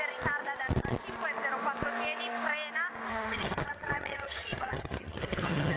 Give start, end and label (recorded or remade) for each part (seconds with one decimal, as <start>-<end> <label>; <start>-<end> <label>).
0.0-3.1 recorded; 3.1-5.8 remade